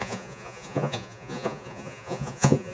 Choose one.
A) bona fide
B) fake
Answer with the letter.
B